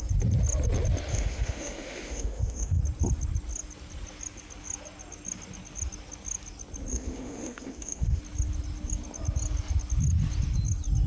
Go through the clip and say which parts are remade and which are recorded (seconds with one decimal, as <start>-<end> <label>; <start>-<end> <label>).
0.0-1.1 recorded; 1.1-2.8 remade; 2.8-6.9 recorded; 6.9-8.2 remade; 8.2-11.1 recorded